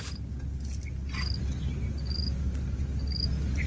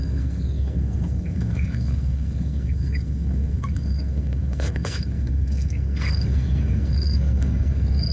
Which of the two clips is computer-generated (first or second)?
second